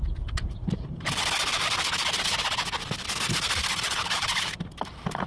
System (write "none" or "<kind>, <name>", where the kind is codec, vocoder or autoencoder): none